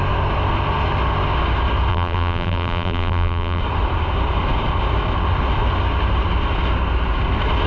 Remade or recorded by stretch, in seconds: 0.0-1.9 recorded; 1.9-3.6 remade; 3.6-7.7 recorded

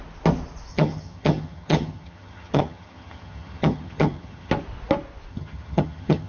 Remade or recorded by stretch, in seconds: 0.0-0.7 recorded; 0.7-4.5 remade; 4.5-5.3 recorded; 5.3-6.3 remade

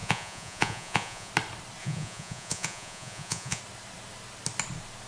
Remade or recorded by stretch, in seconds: 0.0-1.3 remade; 1.3-1.8 recorded; 1.8-3.6 remade; 3.6-5.1 recorded

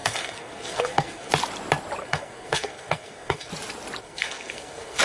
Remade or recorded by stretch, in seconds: 0.0-1.3 remade; 1.3-2.0 recorded; 2.0-3.5 remade; 3.5-4.0 recorded; 4.0-5.0 remade